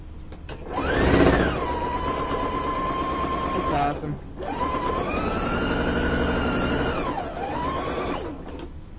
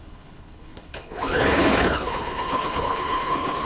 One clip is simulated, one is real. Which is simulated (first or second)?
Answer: second